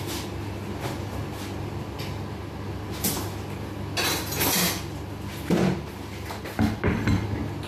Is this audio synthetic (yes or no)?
no